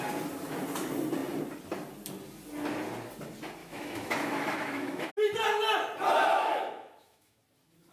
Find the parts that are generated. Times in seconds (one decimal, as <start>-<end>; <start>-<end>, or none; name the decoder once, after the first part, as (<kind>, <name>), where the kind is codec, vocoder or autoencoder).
3.6-5.1 (autoencoder, DAC-VAE); 6.3-7.4